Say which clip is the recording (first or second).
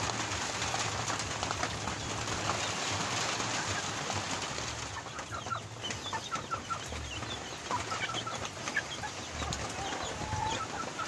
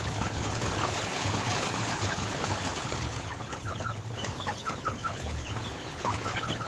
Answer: first